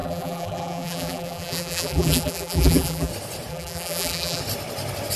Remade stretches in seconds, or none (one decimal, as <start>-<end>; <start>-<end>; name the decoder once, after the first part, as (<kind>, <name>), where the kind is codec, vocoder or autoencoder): 0.0-3.1 (vocoder, BigVGAN v2); 3.5-4.4